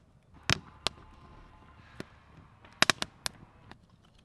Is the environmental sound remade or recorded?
recorded